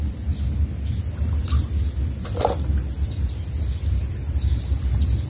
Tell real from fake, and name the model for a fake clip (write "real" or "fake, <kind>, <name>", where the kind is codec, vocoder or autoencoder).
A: real